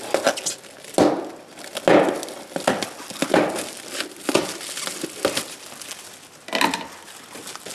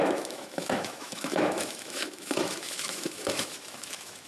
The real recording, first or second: first